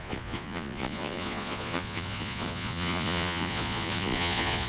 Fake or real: fake